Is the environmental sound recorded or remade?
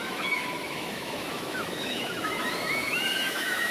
remade